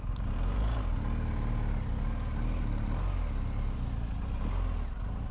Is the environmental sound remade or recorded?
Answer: recorded